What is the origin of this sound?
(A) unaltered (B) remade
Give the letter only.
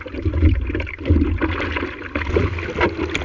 A